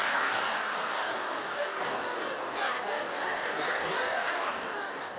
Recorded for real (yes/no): no